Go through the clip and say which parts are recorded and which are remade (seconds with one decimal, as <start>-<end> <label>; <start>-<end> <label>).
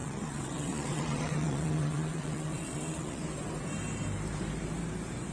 0.0-3.2 remade; 3.2-5.3 recorded